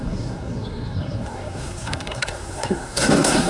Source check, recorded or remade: remade